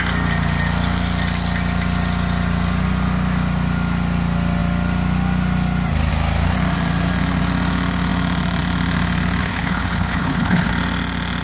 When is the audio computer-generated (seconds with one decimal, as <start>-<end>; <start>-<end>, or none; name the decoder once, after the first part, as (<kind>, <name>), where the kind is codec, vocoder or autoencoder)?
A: 9.4-10.7 (codec, HILCodec)